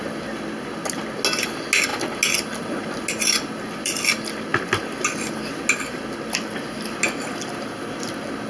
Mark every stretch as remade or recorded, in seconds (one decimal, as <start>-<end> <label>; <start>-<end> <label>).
0.0-8.5 recorded